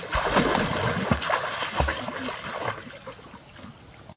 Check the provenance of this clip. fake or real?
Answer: real